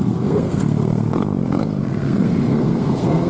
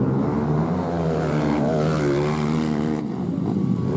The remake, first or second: first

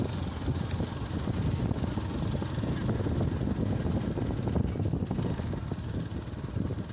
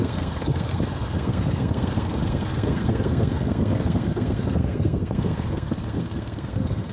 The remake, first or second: second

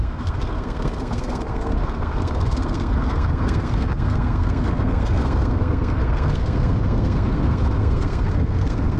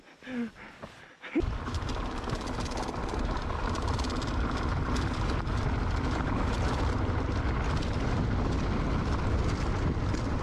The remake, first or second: first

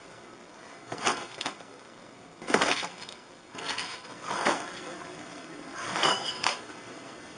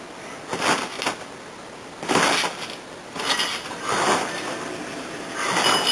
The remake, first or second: first